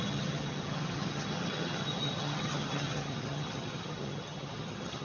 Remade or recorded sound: remade